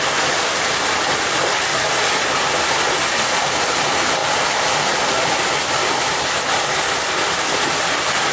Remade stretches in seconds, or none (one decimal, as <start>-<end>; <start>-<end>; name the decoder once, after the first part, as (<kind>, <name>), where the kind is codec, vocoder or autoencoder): none